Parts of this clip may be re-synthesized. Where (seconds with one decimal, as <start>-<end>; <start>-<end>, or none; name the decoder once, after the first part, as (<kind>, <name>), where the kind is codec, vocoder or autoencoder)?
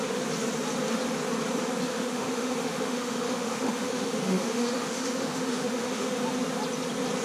1.9-6.2 (autoencoder, DAC-VAE)